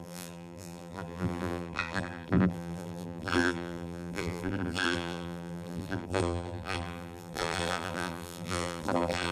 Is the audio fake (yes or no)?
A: yes